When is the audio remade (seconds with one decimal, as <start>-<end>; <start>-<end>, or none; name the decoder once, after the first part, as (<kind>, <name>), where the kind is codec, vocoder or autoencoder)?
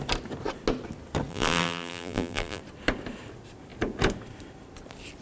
1.3-2.6 (vocoder, BigVGAN v2)